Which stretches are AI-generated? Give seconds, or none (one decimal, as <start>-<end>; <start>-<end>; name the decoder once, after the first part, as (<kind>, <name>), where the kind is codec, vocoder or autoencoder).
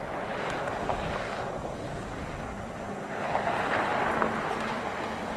none